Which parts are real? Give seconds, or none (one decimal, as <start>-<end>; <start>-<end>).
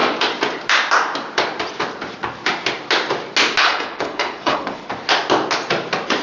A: 0.0-3.6; 4.9-6.2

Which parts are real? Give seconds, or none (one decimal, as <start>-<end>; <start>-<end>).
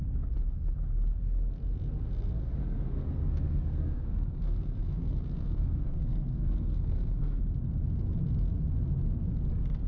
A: 0.0-2.4; 7.4-9.9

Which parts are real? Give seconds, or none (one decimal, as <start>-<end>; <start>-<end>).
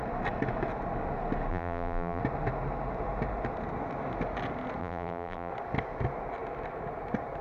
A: 0.0-1.5; 2.2-4.8; 5.5-7.4